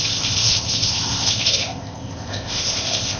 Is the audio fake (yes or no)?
yes